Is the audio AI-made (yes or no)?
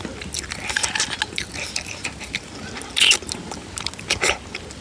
no